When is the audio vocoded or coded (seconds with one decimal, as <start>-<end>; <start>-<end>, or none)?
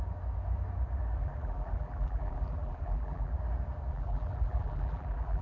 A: 1.2-3.3; 3.9-5.4